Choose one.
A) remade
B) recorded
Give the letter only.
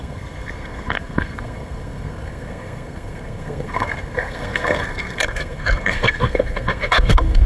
A